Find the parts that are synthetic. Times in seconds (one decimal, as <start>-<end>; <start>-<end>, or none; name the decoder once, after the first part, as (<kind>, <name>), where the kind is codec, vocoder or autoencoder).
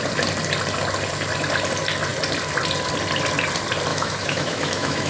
3.9-5.1 (autoencoder, DAC-VAE)